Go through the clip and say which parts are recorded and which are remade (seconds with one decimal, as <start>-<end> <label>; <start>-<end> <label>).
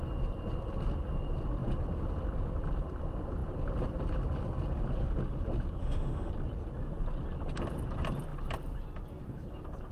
0.0-5.8 recorded; 5.8-6.3 remade; 6.3-9.9 recorded